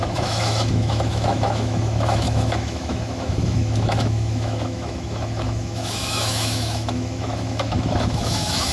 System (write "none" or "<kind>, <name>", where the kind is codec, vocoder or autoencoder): autoencoder, DAC-VAE